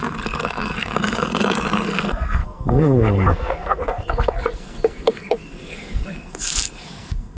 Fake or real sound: fake